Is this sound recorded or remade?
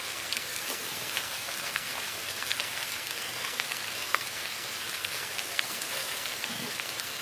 remade